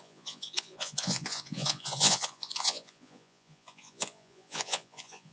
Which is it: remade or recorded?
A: remade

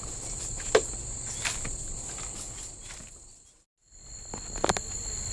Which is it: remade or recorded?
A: recorded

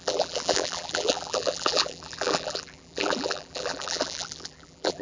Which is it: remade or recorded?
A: remade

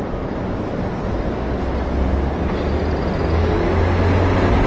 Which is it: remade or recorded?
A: recorded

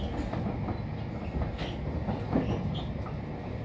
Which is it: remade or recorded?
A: recorded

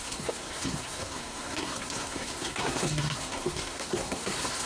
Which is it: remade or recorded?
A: remade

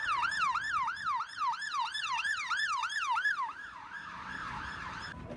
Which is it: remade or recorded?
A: remade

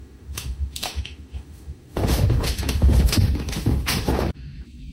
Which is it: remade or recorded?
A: remade